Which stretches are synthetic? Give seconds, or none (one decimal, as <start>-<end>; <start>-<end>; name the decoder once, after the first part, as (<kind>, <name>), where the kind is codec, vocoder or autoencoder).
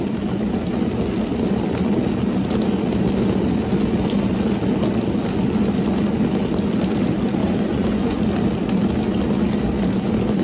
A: 7.4-8.2 (vocoder, Vocos)